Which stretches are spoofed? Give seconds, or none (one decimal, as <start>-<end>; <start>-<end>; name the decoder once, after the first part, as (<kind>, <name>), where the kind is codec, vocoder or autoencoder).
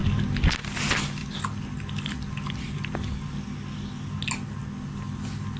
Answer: none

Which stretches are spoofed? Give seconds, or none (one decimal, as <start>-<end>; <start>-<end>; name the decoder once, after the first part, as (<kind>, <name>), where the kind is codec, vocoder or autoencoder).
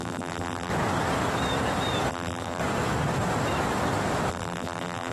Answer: 0.0-0.7 (vocoder, BigVGAN v2); 2.1-2.6; 4.3-5.1